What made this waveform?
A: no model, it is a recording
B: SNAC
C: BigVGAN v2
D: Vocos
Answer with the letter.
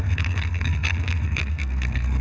B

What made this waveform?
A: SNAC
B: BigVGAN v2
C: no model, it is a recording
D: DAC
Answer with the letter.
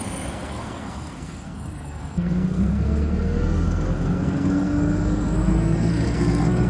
A